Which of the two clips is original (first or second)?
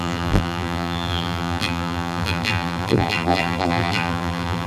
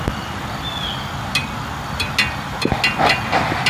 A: second